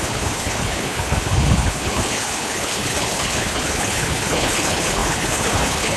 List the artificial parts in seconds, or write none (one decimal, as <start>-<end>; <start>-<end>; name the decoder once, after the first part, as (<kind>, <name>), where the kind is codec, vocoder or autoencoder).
0.0-6.0 (codec, HILCodec)